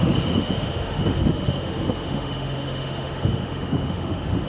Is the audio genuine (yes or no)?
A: no